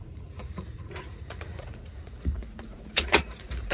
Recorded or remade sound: remade